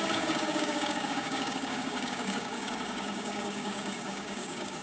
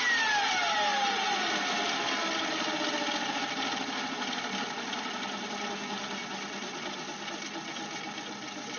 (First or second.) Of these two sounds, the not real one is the first